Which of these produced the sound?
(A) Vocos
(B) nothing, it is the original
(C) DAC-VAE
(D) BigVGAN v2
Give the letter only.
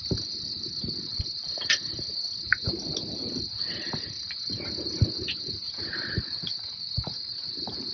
B